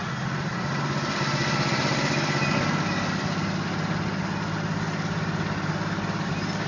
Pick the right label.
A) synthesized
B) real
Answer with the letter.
B